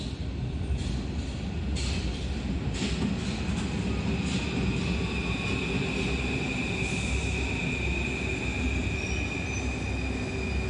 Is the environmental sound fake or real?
real